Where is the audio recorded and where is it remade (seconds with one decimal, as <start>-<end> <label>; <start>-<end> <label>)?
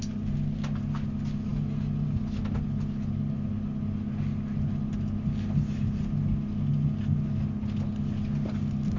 0.0-9.0 recorded